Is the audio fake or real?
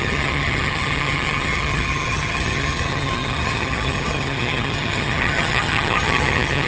fake